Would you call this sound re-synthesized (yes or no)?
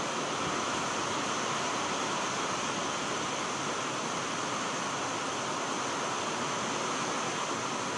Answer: no